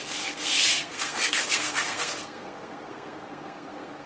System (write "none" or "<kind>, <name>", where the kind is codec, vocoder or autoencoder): codec, SNAC